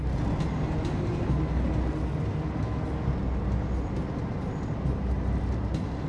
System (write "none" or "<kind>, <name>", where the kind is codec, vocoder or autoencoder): none